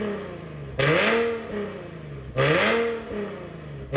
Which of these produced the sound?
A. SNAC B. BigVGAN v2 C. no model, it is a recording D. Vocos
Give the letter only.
C